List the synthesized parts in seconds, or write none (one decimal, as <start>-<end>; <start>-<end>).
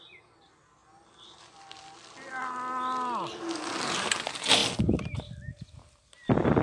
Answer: none